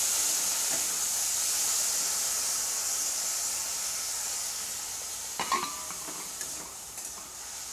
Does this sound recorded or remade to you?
recorded